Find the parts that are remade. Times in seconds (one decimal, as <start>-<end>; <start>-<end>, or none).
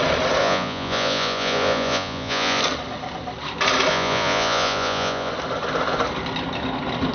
0.4-2.6; 3.9-5.3